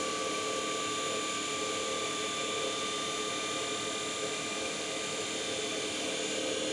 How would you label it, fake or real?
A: real